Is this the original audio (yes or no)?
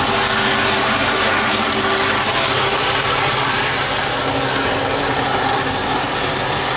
yes